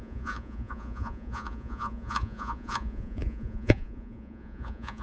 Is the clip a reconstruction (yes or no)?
yes